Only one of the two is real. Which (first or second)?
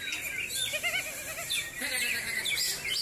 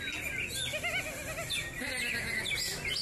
second